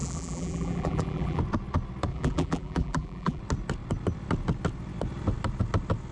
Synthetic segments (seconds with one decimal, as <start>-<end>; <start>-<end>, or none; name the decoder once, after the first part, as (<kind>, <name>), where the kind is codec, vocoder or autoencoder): 0.0-1.4 (vocoder, BigVGAN v2); 2.1-3.4